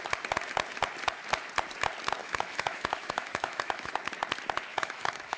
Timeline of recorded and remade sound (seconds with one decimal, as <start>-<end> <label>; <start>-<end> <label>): 0.0-2.2 recorded; 2.2-3.9 remade; 3.9-4.7 recorded; 4.7-5.4 remade